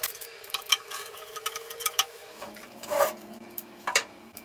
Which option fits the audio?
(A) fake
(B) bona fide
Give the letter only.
A